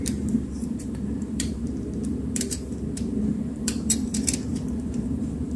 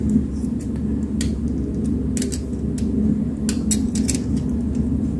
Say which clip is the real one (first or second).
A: second